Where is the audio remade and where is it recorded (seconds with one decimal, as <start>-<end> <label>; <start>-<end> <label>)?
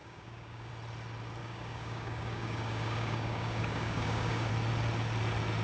0.0-0.7 remade; 0.7-1.4 recorded; 1.4-4.5 remade; 4.5-5.6 recorded